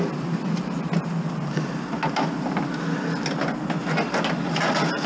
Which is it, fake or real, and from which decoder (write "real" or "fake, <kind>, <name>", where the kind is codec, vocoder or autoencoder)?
real